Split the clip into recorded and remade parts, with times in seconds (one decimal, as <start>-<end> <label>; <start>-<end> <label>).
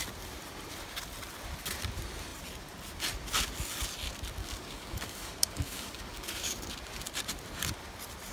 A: 0.0-4.4 recorded; 4.4-6.7 remade; 6.7-8.3 recorded